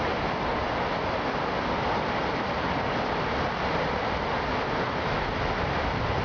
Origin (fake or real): real